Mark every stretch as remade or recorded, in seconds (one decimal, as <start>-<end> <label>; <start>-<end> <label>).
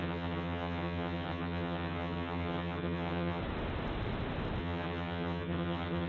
0.0-3.4 remade; 3.4-4.6 recorded; 4.6-6.1 remade